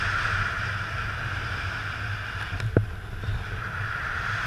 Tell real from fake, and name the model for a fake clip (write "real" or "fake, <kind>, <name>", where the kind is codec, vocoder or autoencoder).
real